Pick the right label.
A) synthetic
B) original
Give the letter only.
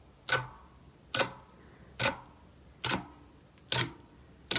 B